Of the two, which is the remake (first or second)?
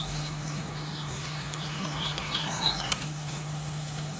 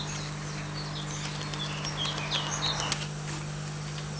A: first